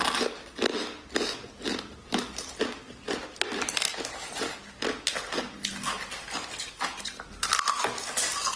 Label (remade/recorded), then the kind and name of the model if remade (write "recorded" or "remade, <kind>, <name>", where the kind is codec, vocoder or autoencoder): recorded